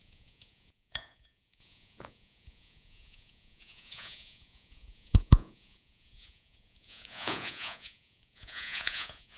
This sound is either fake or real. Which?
fake